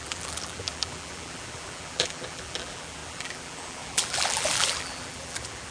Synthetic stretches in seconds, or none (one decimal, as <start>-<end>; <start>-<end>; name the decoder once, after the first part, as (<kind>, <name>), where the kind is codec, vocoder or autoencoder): 0.0-5.7 (vocoder, BigVGAN v2)